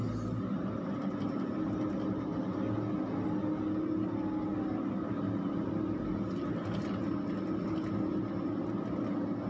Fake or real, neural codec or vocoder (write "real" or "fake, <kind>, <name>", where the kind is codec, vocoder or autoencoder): real